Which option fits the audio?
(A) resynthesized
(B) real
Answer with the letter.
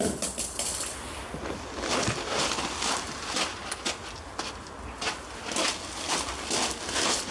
B